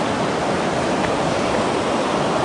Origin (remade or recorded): recorded